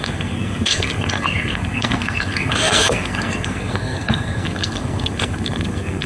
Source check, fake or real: fake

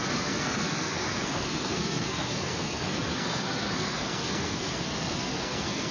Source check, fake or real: fake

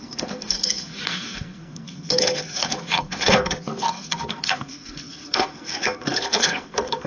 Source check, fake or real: fake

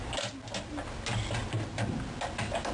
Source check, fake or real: real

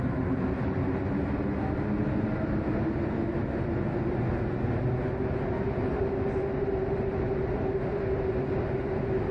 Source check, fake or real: real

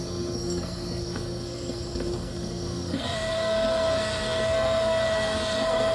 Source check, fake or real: fake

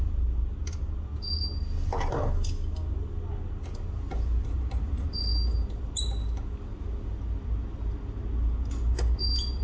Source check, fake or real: real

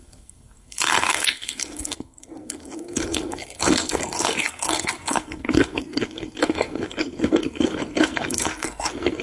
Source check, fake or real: fake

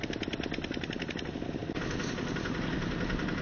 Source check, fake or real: real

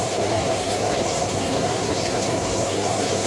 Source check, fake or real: fake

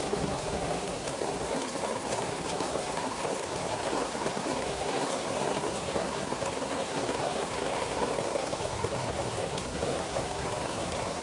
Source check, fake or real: fake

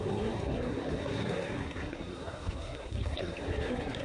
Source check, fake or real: fake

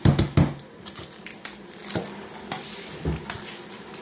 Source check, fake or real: real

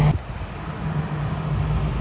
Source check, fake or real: real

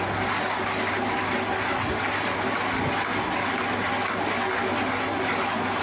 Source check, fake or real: real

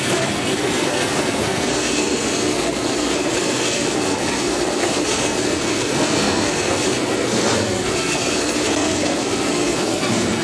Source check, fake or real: fake